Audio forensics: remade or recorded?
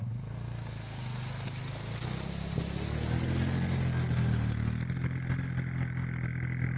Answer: recorded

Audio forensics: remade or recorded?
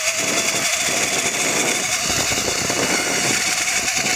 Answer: recorded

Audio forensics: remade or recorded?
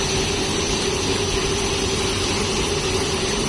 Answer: recorded